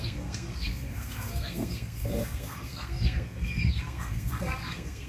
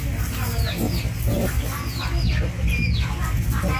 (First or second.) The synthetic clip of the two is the first